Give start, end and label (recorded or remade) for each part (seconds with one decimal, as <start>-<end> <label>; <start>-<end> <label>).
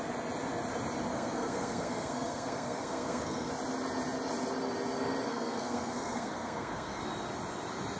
0.0-1.1 recorded; 1.1-3.5 remade; 3.5-5.3 recorded; 5.3-7.0 remade; 7.0-8.0 recorded